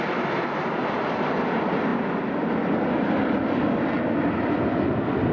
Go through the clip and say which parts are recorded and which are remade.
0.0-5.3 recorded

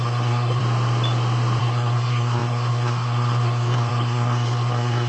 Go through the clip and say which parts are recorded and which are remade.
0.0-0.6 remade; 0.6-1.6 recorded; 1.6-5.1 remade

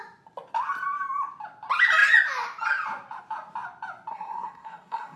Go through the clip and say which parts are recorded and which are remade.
0.0-4.1 recorded; 4.1-5.2 remade

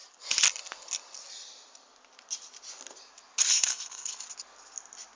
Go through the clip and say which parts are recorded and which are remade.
0.0-3.5 recorded; 3.5-4.1 remade; 4.1-5.2 recorded

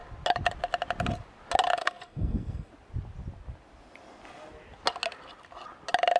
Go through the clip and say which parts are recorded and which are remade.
0.0-1.8 recorded; 1.8-2.7 remade; 2.7-6.2 recorded

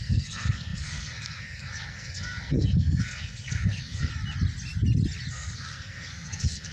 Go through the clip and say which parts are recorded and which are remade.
0.0-4.1 remade; 4.1-5.3 recorded; 5.3-6.7 remade

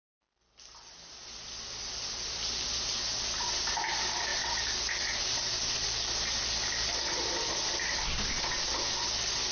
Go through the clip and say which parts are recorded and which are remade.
0.0-9.5 recorded